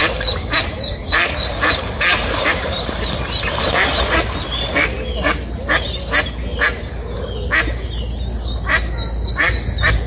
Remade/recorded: recorded